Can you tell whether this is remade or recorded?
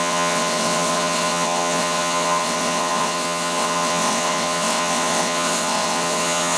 remade